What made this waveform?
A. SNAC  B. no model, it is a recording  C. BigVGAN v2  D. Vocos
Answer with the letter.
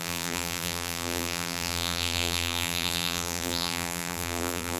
C